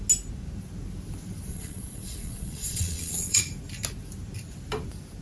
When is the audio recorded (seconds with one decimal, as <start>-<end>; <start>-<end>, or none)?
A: 0.0-1.5; 3.4-5.2